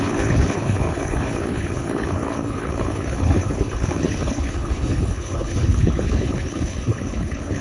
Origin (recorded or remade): remade